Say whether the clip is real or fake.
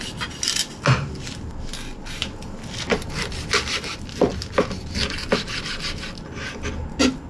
real